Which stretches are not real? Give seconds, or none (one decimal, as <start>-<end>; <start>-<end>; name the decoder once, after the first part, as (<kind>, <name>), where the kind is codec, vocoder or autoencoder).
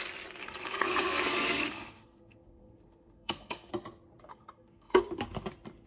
0.4-3.7 (codec, SNAC); 4.3-5.0